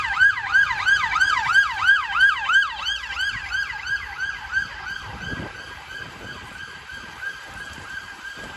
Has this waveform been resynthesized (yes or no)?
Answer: yes